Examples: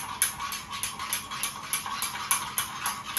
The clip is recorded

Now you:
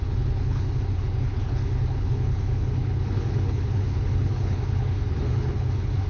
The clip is remade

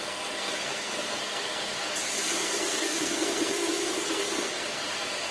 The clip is remade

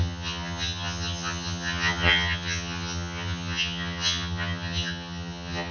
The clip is remade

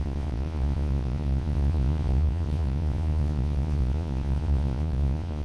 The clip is remade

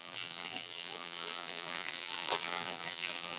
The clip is remade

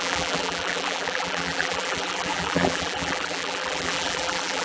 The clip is remade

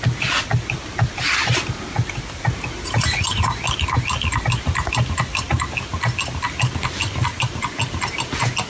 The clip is recorded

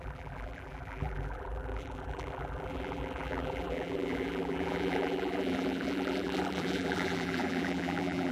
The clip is remade